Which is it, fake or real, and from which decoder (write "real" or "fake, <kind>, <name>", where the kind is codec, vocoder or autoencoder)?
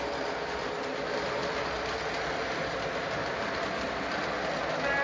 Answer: real